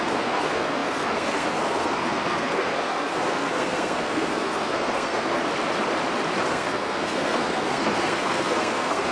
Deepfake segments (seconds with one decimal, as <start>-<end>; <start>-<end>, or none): 0.0-5.4; 6.5-9.1